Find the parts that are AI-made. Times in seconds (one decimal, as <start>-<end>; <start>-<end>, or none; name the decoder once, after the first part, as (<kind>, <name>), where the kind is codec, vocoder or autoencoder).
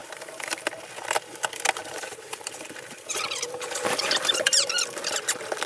0.0-0.7 (vocoder, BigVGAN v2); 1.8-4.7